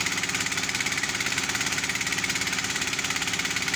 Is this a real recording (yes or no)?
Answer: no